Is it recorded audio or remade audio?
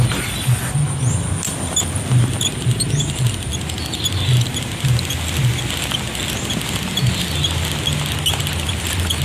recorded